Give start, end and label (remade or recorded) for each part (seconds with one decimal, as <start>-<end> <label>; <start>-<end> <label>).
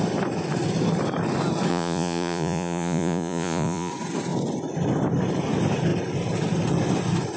0.0-1.7 recorded; 1.7-3.9 remade; 3.9-7.4 recorded